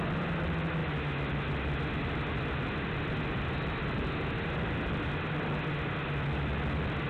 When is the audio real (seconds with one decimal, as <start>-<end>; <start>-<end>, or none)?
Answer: 0.0-7.1